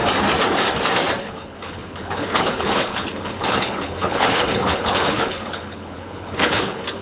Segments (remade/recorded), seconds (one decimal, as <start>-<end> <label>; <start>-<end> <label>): 0.0-1.2 recorded; 1.2-7.0 remade